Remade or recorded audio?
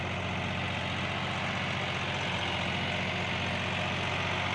recorded